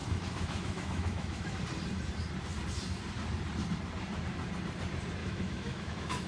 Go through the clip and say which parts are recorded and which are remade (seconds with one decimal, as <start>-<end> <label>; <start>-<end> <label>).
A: 0.0-1.6 remade; 1.6-5.2 recorded; 5.2-6.3 remade